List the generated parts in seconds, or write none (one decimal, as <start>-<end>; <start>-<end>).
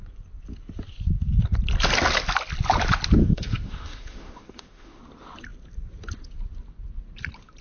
3.2-5.0